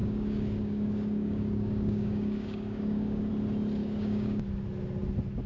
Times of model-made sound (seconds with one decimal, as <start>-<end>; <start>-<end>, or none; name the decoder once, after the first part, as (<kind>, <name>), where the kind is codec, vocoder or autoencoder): 0.0-3.3 (codec, DAC); 3.8-4.4